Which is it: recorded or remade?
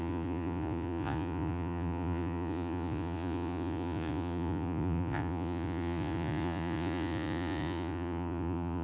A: remade